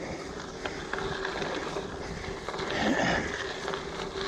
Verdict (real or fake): real